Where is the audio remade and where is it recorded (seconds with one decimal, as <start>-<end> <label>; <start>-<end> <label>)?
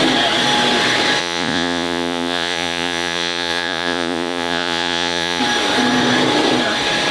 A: 0.0-1.2 recorded; 1.2-5.4 remade; 5.4-7.1 recorded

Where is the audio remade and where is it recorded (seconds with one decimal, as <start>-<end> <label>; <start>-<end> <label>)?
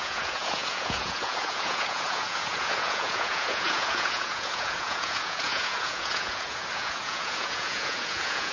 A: 0.0-8.5 remade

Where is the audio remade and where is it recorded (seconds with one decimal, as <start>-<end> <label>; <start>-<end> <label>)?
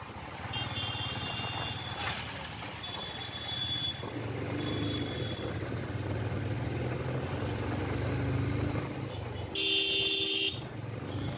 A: 0.0-11.4 recorded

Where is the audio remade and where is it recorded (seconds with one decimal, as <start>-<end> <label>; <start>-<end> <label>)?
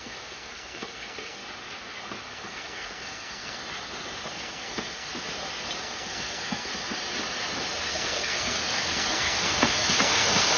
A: 0.0-1.4 remade; 1.4-2.3 recorded; 2.3-3.6 remade; 3.6-4.3 recorded; 4.3-5.1 remade; 5.1-5.8 recorded; 5.8-6.7 remade; 6.7-7.9 recorded; 7.9-10.6 remade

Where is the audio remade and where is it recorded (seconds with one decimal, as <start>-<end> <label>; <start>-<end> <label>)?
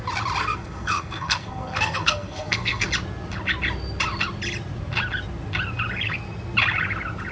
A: 0.0-0.4 recorded; 0.4-2.9 remade; 2.9-7.3 recorded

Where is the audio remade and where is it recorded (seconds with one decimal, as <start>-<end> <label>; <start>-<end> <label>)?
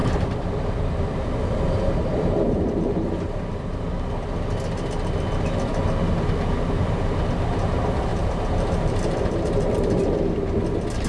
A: 0.0-3.1 remade; 3.1-8.1 recorded; 8.1-10.0 remade; 10.0-11.1 recorded